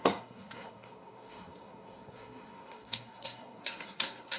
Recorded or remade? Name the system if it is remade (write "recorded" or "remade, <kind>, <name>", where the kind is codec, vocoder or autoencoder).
remade, codec, SNAC